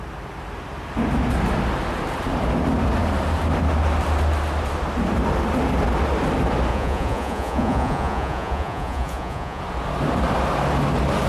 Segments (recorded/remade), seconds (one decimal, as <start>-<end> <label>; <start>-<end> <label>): 0.0-6.7 recorded; 6.7-9.6 remade; 9.6-11.3 recorded